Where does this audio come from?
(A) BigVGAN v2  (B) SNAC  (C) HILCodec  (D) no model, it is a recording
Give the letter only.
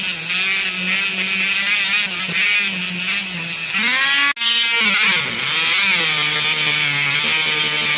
D